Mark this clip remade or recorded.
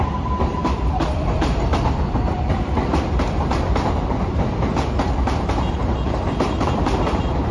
remade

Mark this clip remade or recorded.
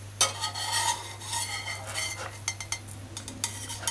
recorded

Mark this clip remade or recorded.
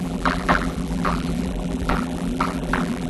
remade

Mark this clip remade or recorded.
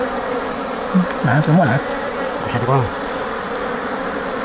remade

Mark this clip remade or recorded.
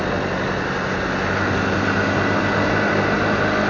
recorded